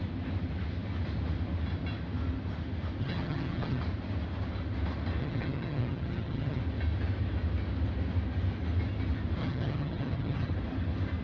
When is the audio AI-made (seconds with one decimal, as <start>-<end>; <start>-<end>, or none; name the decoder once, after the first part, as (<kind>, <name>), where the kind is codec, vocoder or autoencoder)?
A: 3.0-3.8 (vocoder, HiFi-GAN); 5.2-6.6; 9.4-10.5